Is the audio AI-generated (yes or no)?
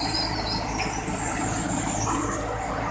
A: no